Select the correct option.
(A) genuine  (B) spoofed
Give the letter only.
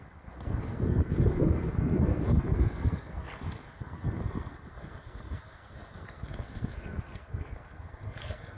B